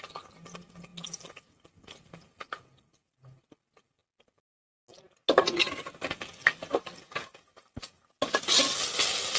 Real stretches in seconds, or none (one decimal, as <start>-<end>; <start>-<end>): 0.0-9.4